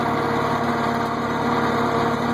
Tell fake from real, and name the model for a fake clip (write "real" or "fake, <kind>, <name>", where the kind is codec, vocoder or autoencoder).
real